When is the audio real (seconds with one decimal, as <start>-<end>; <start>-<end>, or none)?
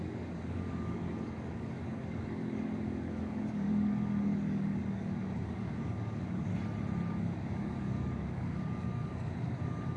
6.5-7.1